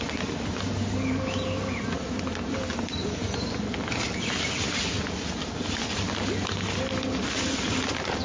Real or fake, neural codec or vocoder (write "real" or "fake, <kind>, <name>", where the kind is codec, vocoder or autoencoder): real